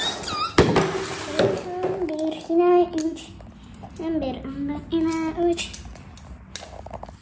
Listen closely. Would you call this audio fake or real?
real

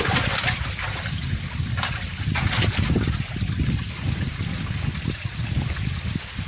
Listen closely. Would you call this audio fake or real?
real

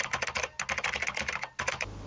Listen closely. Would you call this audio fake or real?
real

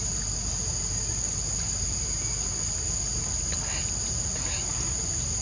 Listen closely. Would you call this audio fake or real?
real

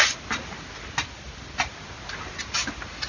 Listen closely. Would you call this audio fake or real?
real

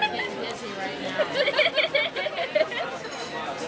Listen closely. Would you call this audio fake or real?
real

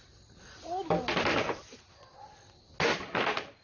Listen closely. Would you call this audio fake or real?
real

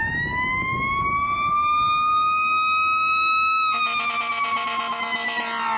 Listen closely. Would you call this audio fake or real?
real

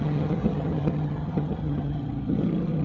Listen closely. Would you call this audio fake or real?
fake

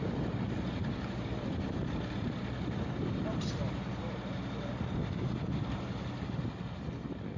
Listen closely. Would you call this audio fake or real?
real